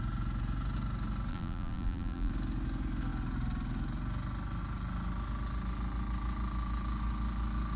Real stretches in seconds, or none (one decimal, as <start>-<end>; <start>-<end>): 0.0-1.3; 2.3-7.8